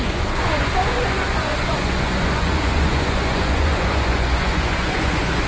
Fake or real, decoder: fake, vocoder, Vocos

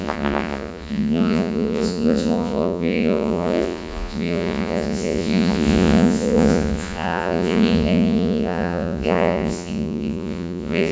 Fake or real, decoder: fake, vocoder, Vocos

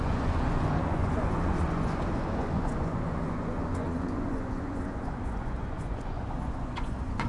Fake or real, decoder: fake, vocoder, Vocos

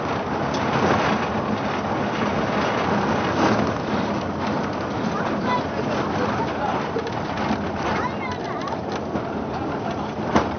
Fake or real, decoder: real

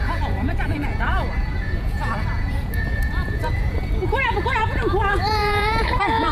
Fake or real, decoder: fake, vocoder, Vocos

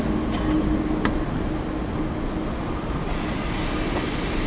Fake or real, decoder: real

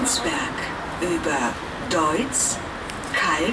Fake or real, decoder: real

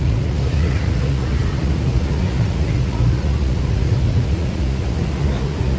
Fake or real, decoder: fake, vocoder, Vocos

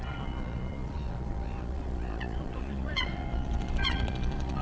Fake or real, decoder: fake, vocoder, Vocos